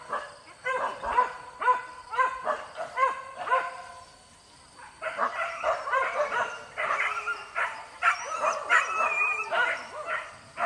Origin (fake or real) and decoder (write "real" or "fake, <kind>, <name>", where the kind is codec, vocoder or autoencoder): fake, vocoder, BigVGAN v2